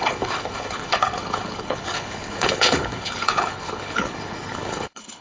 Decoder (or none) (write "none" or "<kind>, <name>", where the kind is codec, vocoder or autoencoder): codec, HILCodec